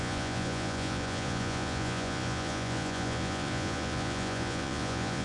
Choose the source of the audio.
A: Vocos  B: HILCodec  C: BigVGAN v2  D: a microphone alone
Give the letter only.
A